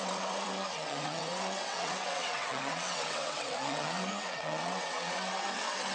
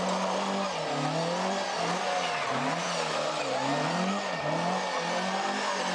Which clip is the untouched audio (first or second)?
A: second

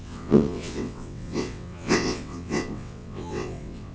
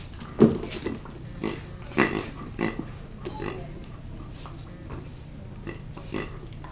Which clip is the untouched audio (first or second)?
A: second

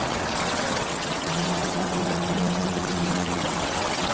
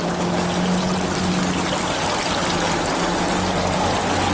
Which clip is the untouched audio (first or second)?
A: second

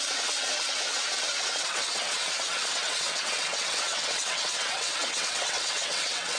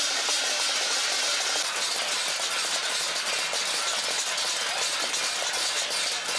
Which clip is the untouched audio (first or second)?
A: second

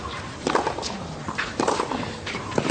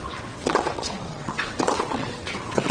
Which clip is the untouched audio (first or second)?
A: first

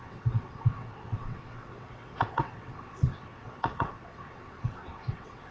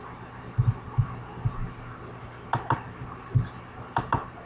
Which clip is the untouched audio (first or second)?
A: second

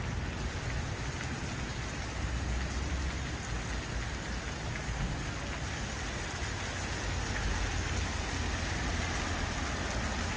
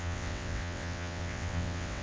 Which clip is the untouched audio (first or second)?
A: first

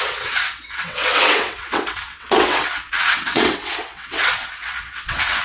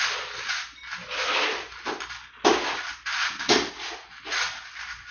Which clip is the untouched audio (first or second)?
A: second